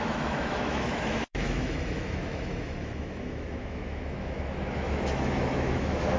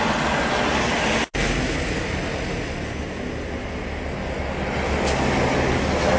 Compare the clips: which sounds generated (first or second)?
first